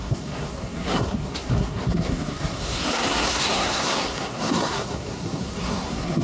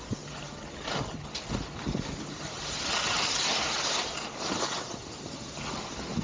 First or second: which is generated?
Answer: first